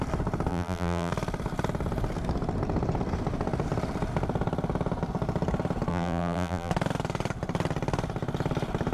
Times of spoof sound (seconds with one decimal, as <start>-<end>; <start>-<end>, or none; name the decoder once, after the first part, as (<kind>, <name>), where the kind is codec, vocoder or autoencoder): 0.5-1.1 (vocoder, BigVGAN v2); 5.9-6.7